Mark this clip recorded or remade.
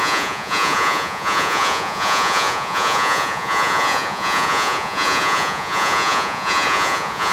remade